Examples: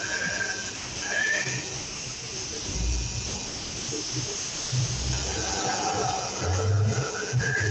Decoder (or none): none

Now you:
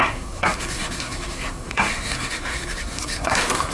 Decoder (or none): codec, SNAC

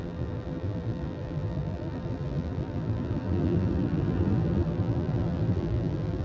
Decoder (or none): vocoder, BigVGAN v2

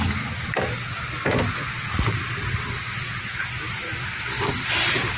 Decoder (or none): none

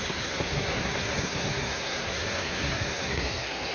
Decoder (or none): codec, SNAC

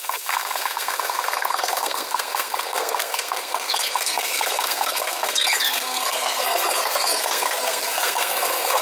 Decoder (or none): codec, SNAC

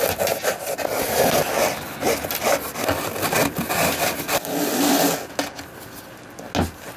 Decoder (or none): none